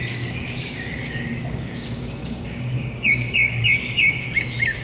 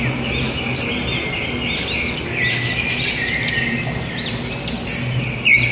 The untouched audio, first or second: second